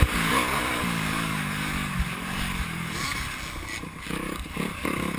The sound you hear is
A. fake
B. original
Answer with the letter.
A